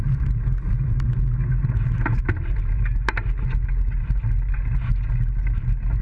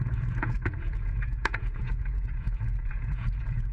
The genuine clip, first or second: first